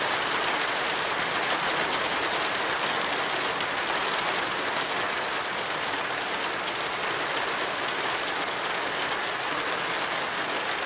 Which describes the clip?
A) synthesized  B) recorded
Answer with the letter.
B